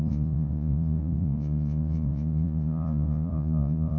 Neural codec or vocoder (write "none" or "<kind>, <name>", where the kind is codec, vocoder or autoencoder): vocoder, Vocos